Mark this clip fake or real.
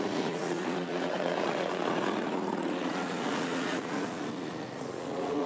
fake